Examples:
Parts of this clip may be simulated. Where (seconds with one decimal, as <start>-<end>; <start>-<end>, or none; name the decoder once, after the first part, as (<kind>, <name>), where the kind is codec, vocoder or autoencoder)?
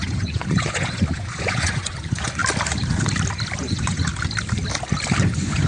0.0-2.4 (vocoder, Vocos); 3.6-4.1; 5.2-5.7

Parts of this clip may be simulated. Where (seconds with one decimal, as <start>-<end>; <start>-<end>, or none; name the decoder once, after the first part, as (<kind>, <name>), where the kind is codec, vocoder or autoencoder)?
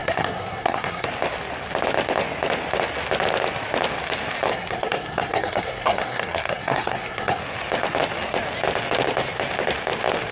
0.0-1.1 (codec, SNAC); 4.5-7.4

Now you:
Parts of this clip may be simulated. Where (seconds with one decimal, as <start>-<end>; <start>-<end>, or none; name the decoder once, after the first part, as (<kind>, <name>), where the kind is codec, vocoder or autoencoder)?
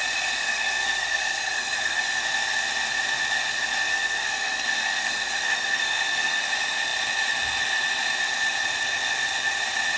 0.4-2.2 (codec, SNAC); 3.9-6.4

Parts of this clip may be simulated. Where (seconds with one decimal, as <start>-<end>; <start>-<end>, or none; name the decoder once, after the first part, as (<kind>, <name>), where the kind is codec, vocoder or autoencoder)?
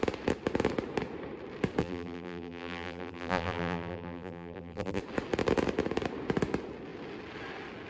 1.8-5.0 (vocoder, BigVGAN v2)